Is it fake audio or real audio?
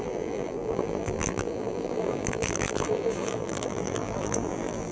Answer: fake